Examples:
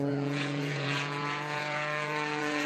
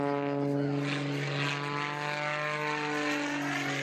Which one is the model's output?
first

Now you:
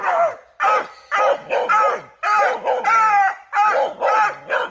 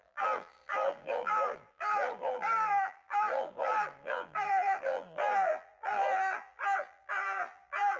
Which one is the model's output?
second